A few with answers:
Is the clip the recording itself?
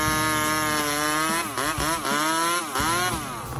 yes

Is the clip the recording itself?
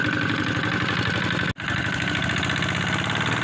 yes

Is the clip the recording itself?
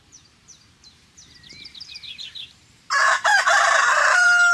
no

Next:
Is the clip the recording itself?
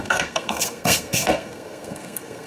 no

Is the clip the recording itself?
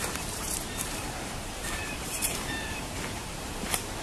no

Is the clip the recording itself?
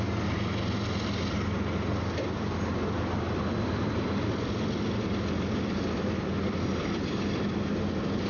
yes